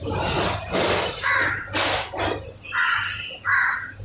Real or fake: fake